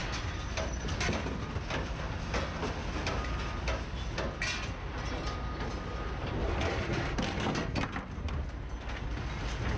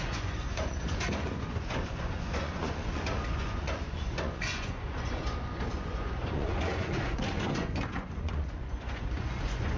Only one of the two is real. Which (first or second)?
first